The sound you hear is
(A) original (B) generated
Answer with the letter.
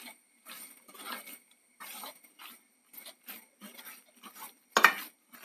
A